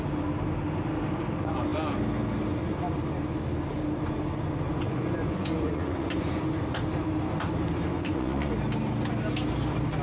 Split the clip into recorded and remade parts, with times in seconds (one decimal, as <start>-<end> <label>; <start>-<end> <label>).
0.0-4.7 recorded; 4.7-6.4 remade; 6.4-7.9 recorded; 7.9-8.5 remade; 8.5-10.0 recorded